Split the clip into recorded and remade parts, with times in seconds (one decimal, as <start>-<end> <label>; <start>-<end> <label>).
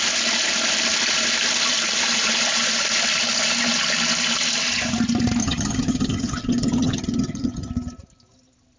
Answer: 0.0-5.4 recorded; 5.4-7.7 remade; 7.7-8.8 recorded